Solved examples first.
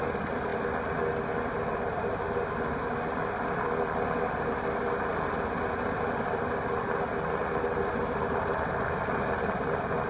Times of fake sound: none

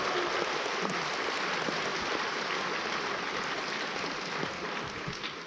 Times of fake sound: none

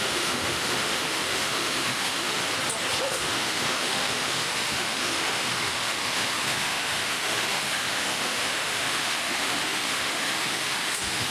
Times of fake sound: 0.0-2.4 (autoencoder, DAC-VAE); 3.0-11.3

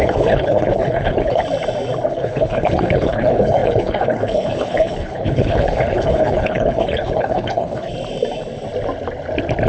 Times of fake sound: 0.0-1.4 (codec, HILCodec); 2.1-7.9

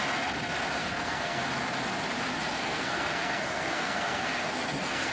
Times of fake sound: 0.8-1.4 (codec, SNAC); 2.5-5.1

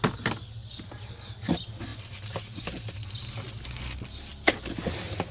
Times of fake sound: none